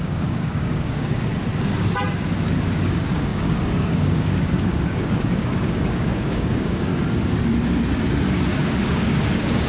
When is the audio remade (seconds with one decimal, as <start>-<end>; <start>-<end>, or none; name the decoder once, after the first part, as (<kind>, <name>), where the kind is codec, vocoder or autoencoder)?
0.0-1.3 (codec, DAC); 2.8-6.9; 8.6-9.7